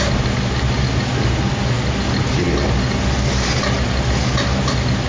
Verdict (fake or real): real